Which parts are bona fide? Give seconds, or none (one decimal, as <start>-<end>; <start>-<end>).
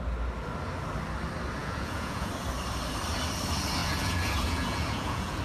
0.0-1.6; 2.3-3.8